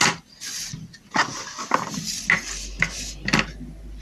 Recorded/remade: recorded